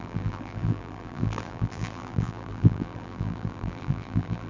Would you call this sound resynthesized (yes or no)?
yes